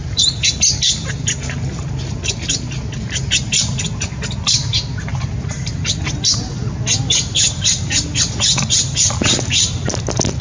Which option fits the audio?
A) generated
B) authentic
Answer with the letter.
B